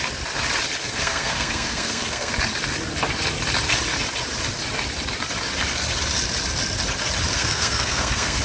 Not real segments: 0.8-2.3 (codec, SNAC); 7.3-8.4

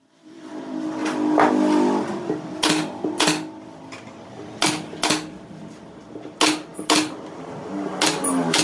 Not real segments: none

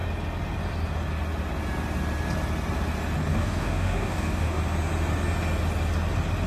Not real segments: 3.3-4.6 (codec, DAC)

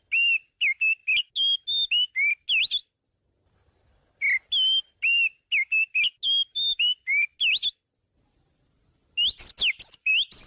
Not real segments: none

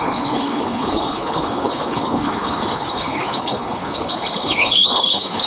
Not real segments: 0.0-5.5 (codec, HILCodec)

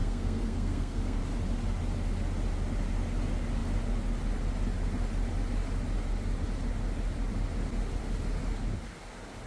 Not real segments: 0.0-1.2 (codec, SNAC)

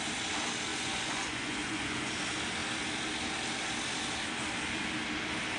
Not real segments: 0.7-2.1 (vocoder, Vocos)

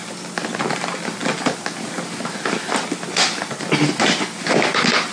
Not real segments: none